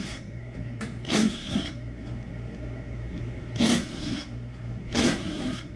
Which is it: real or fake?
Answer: fake